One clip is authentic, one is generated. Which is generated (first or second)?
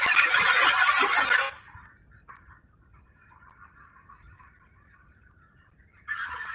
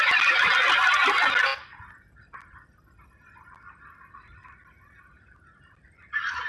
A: second